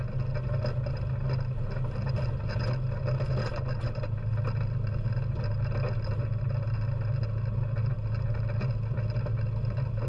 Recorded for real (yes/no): yes